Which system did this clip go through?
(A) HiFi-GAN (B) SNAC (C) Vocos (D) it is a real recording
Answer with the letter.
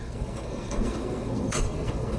B